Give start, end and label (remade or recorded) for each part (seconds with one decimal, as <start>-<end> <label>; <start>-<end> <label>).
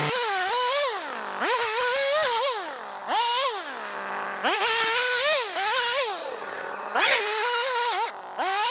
0.0-6.2 recorded; 6.2-7.2 remade; 7.2-8.7 recorded